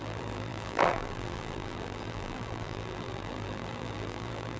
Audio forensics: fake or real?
fake